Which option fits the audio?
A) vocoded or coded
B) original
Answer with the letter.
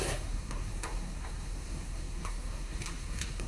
A